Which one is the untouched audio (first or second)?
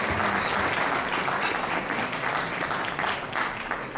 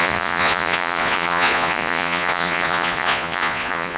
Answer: first